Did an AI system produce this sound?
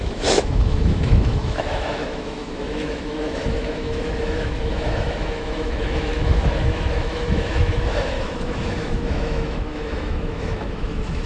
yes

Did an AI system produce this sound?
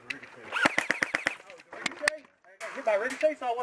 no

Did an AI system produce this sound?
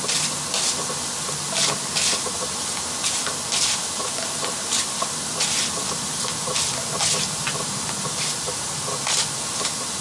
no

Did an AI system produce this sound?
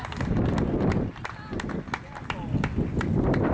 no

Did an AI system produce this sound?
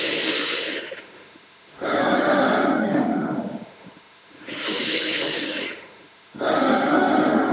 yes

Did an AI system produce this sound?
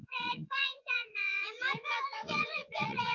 yes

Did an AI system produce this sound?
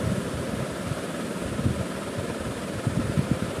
no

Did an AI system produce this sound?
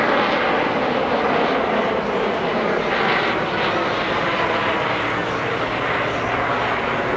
no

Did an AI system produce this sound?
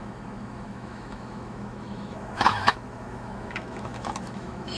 yes